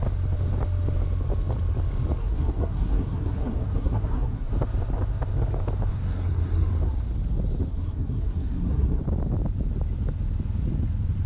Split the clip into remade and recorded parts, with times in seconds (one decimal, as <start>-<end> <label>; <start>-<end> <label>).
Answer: 0.0-2.2 recorded; 2.2-4.5 remade; 4.5-5.9 recorded; 5.9-6.7 remade; 6.7-7.7 recorded; 7.7-9.0 remade; 9.0-11.3 recorded